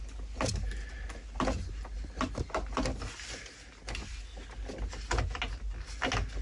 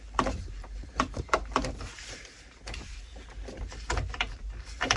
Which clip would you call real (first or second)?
first